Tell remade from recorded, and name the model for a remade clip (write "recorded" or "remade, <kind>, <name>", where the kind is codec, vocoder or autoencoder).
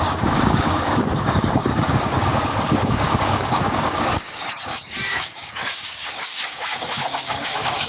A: remade, codec, DAC